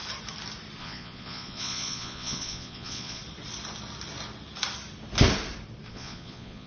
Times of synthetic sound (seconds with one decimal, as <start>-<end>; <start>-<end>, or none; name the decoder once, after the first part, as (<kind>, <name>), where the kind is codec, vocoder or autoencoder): 0.8-3.2 (vocoder, Vocos); 5.9-6.7